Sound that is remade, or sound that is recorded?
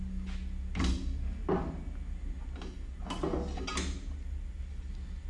recorded